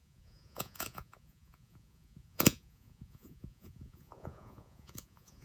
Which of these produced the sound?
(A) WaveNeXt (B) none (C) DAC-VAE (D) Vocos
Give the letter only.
D